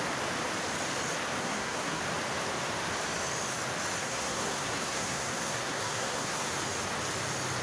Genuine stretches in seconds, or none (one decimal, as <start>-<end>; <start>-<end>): 0.0-1.4; 2.0-4.0; 6.5-7.6